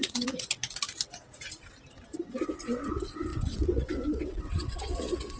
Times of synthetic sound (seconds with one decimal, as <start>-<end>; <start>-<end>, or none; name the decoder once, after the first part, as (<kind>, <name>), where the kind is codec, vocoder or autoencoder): 0.0-0.6 (vocoder, WaveNeXt); 2.6-5.4